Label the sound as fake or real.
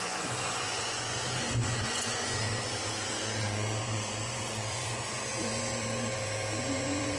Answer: fake